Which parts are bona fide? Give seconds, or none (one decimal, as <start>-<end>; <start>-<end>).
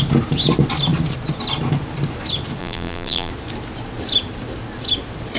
0.0-2.6; 3.3-5.4